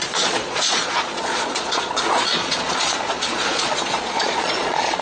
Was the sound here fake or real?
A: fake